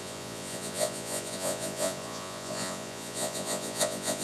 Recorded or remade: remade